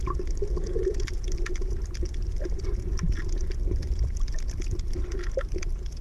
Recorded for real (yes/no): yes